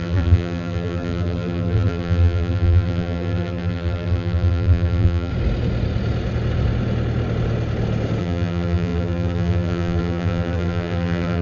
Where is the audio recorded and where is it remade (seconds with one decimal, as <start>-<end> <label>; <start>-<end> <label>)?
0.0-5.3 remade; 5.3-8.2 recorded; 8.2-11.4 remade